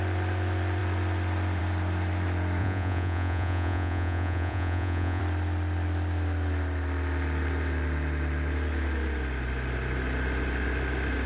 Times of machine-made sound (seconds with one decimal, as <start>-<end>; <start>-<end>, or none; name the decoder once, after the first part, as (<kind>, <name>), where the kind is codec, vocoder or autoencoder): 2.6-5.2 (vocoder, Vocos)